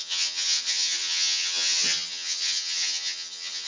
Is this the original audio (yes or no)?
no